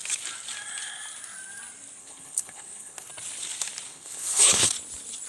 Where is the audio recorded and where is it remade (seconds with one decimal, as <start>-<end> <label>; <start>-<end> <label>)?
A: 0.0-2.0 recorded; 2.0-3.1 remade; 3.1-3.9 recorded; 3.9-4.7 remade; 4.7-5.3 recorded